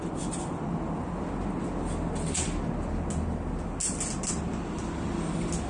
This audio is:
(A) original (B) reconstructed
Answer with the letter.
A